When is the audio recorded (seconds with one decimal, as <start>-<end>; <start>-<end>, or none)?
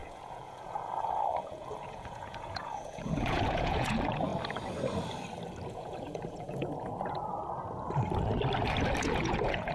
4.3-5.7; 7.4-9.0